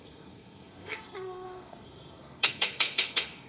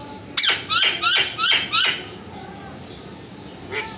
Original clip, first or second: second